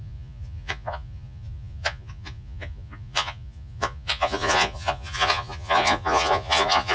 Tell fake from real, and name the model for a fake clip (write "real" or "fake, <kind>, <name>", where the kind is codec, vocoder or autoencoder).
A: fake, vocoder, Vocos